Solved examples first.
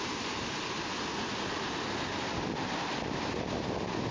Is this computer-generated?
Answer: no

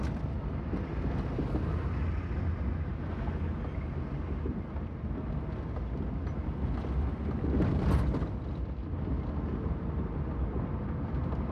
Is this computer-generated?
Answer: no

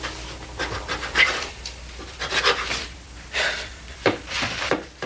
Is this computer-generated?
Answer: yes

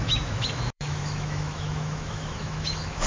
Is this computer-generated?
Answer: yes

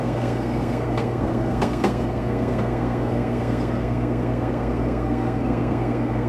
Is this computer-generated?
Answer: yes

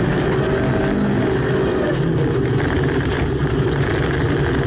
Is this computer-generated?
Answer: no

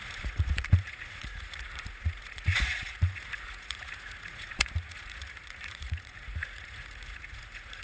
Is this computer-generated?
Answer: yes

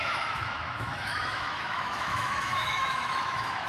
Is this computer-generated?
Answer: yes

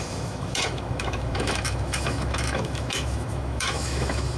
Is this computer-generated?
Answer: yes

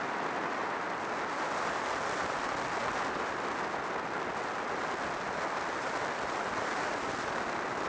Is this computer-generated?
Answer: no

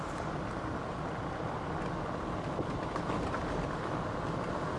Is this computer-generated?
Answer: no